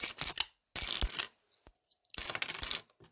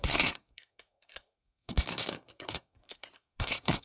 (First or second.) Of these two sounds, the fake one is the second